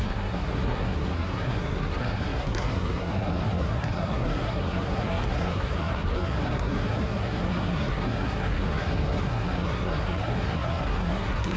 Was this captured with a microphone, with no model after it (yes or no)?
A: no